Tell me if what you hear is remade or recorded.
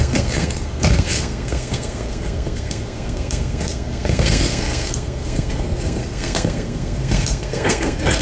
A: remade